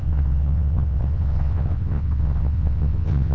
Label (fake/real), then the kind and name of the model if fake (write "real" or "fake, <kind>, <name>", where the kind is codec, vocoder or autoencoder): fake, vocoder, WaveNeXt